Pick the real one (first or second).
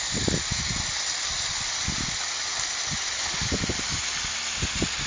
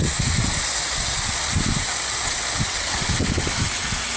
first